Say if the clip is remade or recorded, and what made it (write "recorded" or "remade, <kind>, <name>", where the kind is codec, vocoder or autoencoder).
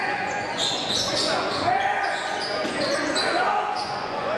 remade, vocoder, Vocos